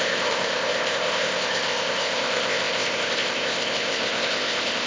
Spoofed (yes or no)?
yes